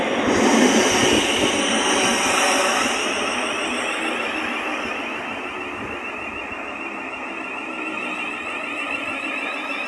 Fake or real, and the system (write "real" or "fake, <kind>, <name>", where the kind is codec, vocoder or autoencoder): real